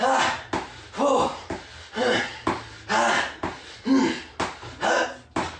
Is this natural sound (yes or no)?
yes